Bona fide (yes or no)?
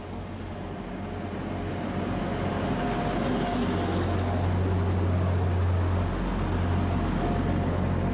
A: yes